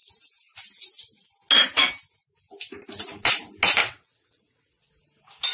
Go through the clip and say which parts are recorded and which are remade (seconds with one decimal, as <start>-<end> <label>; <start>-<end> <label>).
0.0-3.8 recorded; 3.8-4.9 remade; 4.9-5.5 recorded